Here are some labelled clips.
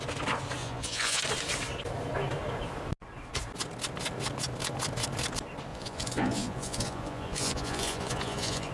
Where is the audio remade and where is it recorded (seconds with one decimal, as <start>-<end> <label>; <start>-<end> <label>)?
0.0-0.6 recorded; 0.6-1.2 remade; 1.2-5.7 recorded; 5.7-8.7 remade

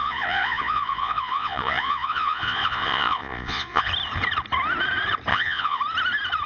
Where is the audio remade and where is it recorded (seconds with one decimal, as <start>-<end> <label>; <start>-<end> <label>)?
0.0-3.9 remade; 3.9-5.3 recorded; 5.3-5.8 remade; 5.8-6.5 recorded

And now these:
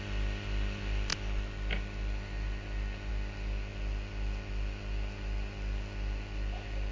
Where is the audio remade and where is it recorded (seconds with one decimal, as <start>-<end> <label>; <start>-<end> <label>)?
0.0-6.9 recorded

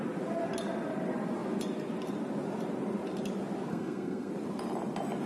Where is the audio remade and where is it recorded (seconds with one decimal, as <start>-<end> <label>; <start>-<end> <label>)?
0.0-3.7 recorded; 3.7-4.3 remade; 4.3-5.3 recorded

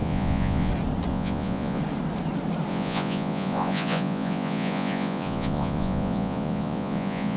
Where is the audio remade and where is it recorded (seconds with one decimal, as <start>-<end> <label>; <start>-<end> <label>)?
0.0-0.7 remade; 0.7-1.1 recorded; 1.1-1.8 remade; 1.8-2.7 recorded; 2.7-7.4 remade